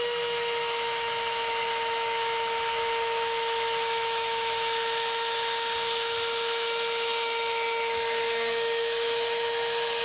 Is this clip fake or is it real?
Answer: fake